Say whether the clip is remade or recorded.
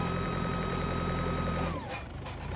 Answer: remade